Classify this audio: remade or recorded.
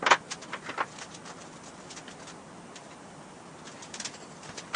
recorded